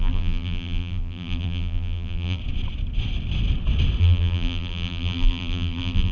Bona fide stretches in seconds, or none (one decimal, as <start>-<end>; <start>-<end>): 2.4-4.0